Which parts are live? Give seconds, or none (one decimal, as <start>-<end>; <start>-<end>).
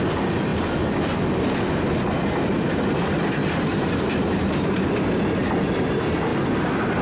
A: 0.0-6.3